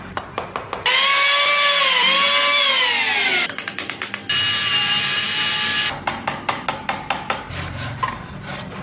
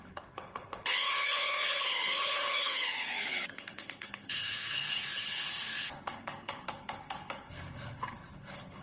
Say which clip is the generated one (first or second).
second